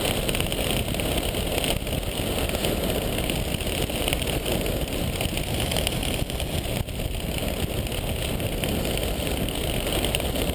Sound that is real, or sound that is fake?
real